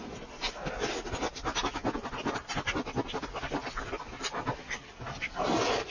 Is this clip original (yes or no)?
yes